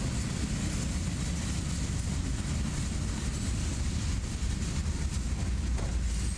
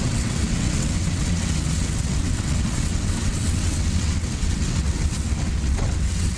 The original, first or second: first